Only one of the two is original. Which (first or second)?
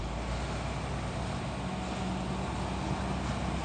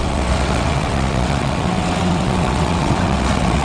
first